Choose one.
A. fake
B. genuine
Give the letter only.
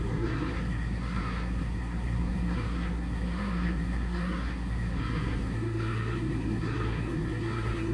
A